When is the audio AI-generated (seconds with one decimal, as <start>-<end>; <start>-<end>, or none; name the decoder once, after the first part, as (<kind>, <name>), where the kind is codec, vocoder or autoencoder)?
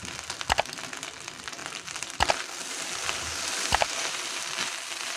1.6-4.7 (vocoder, BigVGAN v2)